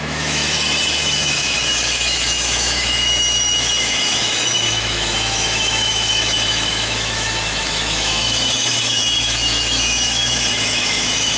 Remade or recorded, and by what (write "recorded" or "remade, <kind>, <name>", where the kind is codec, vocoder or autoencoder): remade, autoencoder, DAC-VAE